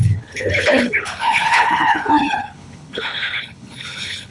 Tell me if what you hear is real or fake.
fake